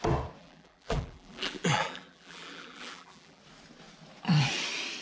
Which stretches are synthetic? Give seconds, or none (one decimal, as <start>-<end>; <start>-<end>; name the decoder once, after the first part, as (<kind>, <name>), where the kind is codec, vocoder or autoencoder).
0.4-3.4 (vocoder, BigVGAN v2)